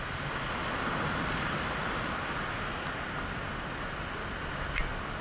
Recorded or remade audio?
recorded